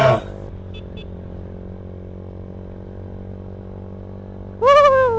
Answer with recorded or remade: recorded